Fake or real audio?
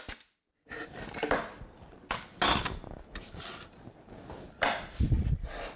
real